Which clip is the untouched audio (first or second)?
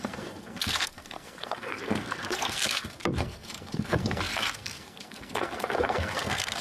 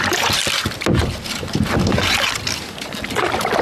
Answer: second